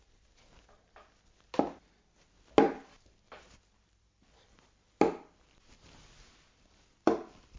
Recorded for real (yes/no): yes